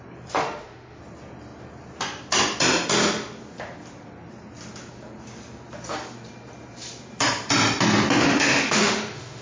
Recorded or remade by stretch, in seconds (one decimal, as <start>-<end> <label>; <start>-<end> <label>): 0.0-0.4 recorded; 0.4-1.0 remade; 1.0-8.2 recorded; 8.2-9.4 remade